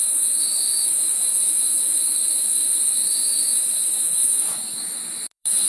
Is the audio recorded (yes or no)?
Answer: no